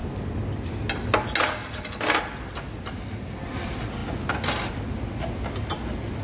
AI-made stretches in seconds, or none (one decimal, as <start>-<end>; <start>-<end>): none